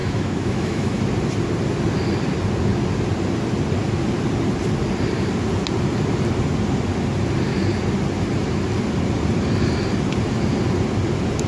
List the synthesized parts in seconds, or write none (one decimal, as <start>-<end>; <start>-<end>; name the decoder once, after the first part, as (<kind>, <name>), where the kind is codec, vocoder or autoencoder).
0.0-1.0 (autoencoder, DAC-VAE)

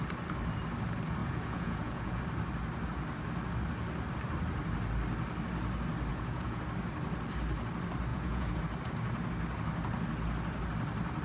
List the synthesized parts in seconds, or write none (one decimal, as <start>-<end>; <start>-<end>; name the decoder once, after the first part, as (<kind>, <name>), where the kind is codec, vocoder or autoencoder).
1.2-2.2 (vocoder, Vocos); 6.1-6.6; 8.1-8.6

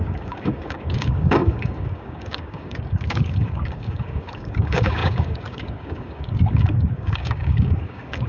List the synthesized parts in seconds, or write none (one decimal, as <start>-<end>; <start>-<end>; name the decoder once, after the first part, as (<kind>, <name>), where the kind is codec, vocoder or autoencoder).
0.0-8.3 (codec, DAC)

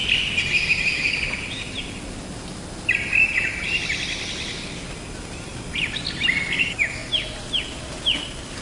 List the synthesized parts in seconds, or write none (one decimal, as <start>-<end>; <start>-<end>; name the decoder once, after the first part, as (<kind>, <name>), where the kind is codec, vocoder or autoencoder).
none

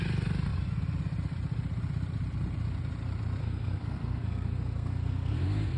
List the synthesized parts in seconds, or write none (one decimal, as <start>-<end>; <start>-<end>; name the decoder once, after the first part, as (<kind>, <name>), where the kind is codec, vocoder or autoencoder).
3.4-5.8 (codec, SNAC)

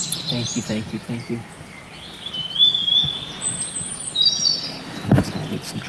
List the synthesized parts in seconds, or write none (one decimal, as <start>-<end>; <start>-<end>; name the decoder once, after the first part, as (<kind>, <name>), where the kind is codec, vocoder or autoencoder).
0.5-2.3 (vocoder, BigVGAN v2); 3.0-4.4

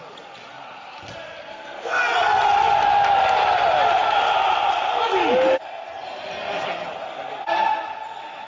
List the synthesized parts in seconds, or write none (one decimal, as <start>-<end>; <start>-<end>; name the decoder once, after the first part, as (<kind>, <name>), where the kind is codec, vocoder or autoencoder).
1.5-2.0 (codec, SNAC)